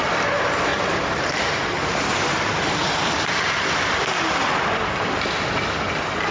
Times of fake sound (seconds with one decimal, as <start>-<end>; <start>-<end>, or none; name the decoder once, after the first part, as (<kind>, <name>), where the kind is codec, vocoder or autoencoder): none